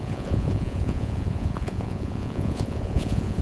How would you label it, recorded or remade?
remade